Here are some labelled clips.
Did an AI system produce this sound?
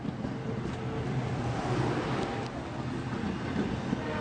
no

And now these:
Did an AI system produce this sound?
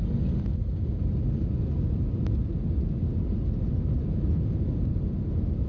no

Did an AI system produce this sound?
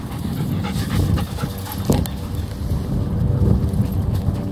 no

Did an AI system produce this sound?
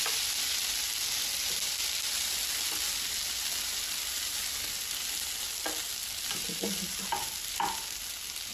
no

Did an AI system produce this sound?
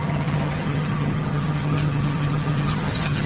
yes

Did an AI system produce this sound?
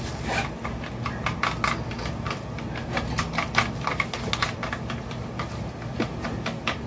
no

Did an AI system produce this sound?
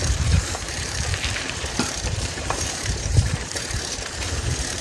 yes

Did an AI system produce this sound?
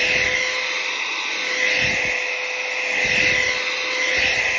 no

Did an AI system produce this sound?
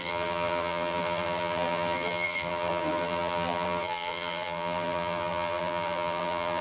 yes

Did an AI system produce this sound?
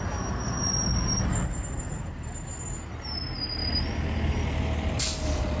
no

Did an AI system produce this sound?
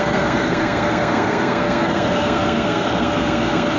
yes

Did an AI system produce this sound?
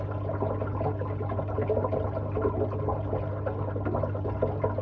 no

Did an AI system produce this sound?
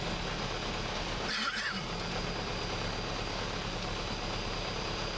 no